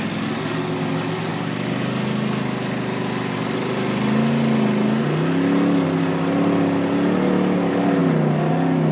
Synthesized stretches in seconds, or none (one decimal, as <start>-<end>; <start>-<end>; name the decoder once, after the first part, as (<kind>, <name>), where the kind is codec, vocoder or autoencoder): none